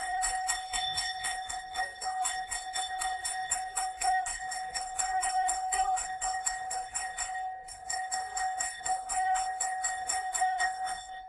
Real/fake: fake